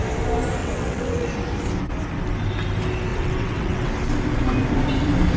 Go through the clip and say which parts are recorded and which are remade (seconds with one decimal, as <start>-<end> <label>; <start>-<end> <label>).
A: 0.0-0.6 recorded; 0.6-1.3 remade; 1.3-3.1 recorded; 3.1-3.9 remade; 3.9-5.4 recorded